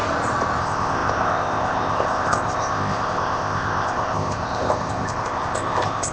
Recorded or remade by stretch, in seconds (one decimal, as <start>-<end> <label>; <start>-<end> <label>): 0.0-0.6 recorded; 0.6-6.1 remade